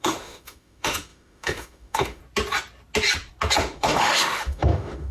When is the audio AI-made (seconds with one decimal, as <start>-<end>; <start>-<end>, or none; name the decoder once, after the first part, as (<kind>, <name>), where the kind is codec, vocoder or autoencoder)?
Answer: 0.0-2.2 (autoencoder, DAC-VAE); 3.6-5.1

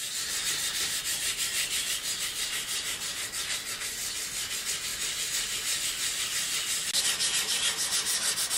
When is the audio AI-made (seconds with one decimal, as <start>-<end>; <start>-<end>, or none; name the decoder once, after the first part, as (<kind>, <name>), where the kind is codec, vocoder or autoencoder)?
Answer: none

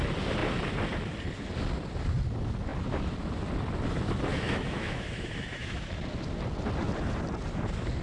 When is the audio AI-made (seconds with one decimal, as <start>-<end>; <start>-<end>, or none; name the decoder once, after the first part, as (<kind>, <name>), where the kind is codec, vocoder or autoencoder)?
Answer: 4.3-5.9 (autoencoder, DAC-VAE)

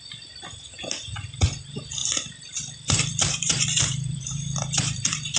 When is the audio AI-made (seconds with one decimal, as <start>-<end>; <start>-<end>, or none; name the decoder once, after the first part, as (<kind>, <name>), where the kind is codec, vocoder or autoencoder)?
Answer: 2.0-5.4 (vocoder, BigVGAN v2)

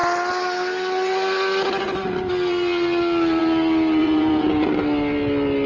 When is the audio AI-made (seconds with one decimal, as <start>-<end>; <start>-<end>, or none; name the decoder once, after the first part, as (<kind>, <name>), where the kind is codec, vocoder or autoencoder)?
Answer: 4.0-4.7 (vocoder, Vocos)

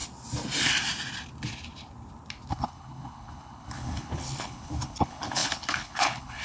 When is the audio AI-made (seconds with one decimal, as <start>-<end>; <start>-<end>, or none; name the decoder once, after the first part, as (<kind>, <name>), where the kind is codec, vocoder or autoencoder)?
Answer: 2.5-6.4 (codec, HILCodec)